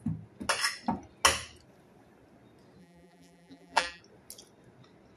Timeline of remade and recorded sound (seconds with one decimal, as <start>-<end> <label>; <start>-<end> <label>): 0.0-2.8 recorded; 2.8-4.0 remade; 4.0-5.2 recorded